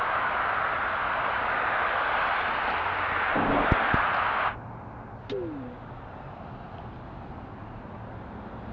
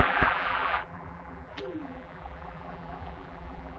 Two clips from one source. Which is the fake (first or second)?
second